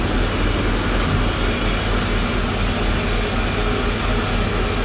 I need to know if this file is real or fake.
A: real